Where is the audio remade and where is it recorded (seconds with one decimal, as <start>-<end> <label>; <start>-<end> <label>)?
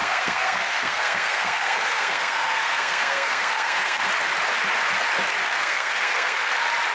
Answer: 0.0-4.1 remade; 4.1-5.4 recorded; 5.4-6.5 remade; 6.5-6.9 recorded